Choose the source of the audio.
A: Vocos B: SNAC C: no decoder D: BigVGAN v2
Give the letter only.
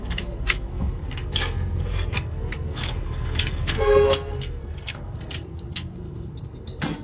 B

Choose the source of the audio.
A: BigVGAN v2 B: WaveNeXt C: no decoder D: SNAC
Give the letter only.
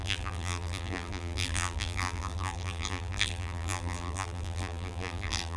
A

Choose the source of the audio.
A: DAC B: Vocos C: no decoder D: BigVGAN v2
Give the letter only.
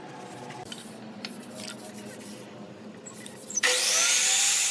C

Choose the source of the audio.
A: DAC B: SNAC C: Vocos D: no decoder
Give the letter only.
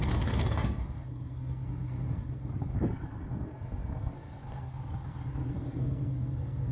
B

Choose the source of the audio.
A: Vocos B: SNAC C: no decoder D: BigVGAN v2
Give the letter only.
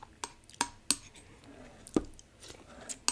C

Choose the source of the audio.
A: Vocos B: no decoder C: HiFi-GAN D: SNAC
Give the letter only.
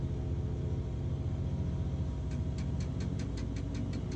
B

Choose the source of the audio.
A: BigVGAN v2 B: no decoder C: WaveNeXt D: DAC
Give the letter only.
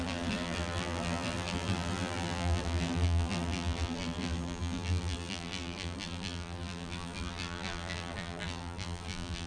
A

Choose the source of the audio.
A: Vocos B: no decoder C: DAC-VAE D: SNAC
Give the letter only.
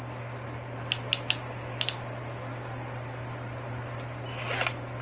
B